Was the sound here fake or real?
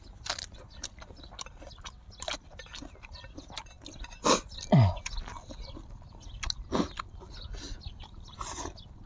real